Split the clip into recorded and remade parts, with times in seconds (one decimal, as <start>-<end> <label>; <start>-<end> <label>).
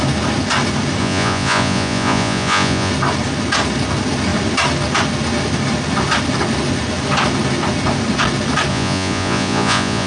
0.0-1.0 recorded; 1.0-2.9 remade; 2.9-8.7 recorded; 8.7-10.1 remade